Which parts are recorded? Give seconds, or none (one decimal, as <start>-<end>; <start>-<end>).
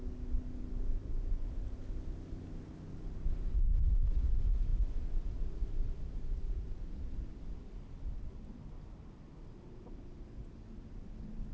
0.0-1.0; 1.5-11.5